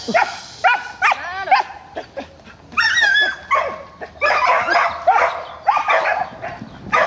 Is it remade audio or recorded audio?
recorded